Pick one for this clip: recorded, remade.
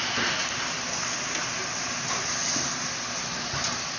recorded